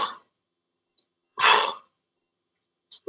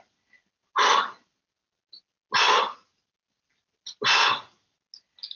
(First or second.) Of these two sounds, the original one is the second